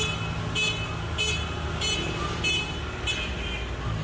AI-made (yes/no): no